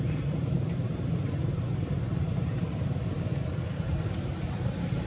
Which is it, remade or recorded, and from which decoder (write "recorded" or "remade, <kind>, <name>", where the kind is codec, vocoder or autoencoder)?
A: remade, vocoder, BigVGAN v2